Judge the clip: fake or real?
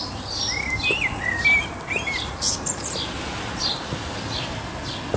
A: real